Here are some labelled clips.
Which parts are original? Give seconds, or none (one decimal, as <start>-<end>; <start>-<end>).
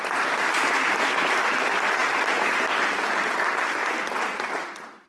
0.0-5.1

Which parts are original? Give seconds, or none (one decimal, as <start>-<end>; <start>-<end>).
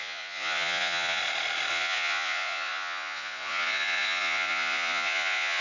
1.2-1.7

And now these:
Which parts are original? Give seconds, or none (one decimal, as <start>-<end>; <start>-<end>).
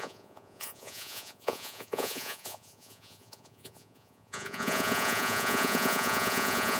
none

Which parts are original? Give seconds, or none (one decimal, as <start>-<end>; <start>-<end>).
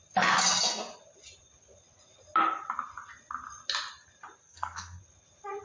0.0-4.4; 5.0-5.6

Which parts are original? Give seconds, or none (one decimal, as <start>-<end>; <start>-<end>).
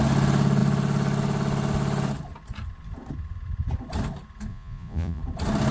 0.0-4.5; 5.2-5.7